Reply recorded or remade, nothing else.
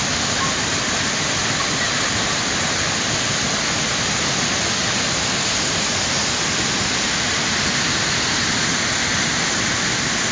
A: recorded